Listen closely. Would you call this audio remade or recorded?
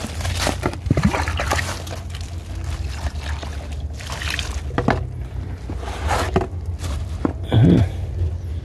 recorded